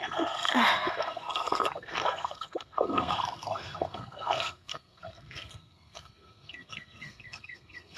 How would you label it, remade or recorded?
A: remade